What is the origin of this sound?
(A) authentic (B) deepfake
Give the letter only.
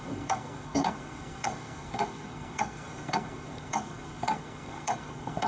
B